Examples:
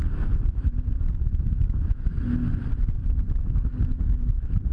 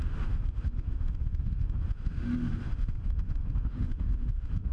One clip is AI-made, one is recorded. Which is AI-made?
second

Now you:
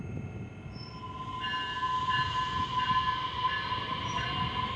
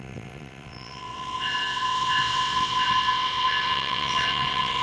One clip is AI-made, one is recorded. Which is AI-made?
second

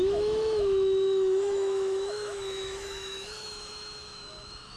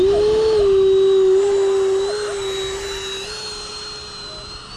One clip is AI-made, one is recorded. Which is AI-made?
first